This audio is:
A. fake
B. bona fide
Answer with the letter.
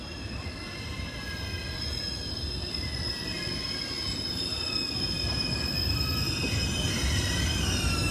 B